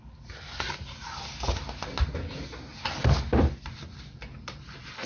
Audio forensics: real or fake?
real